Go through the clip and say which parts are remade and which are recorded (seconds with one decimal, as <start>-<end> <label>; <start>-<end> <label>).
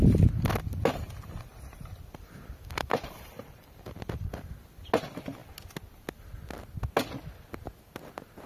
0.0-1.5 recorded; 1.5-4.5 remade; 4.5-8.5 recorded